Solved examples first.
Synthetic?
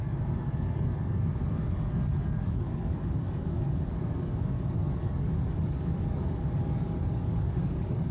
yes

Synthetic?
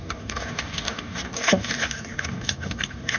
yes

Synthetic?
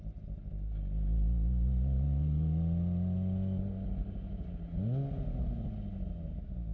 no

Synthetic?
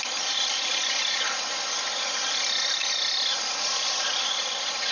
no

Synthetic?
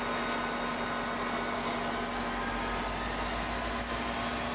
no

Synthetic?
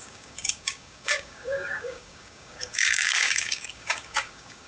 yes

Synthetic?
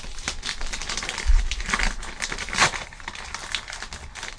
no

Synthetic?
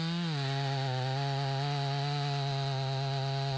no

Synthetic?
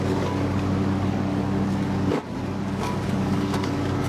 yes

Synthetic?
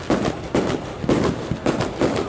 no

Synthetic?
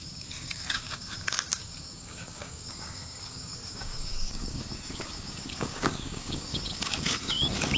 yes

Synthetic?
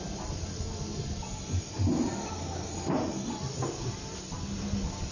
no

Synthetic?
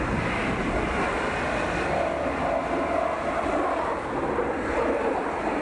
no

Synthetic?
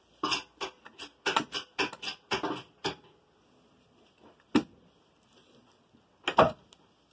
no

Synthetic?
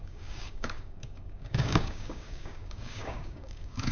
yes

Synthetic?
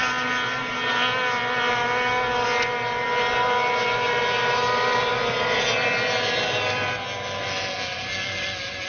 no